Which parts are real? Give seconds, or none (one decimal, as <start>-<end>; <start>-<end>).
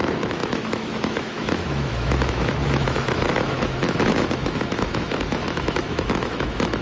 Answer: none